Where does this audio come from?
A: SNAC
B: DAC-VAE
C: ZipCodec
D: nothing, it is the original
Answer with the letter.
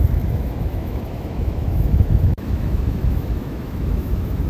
B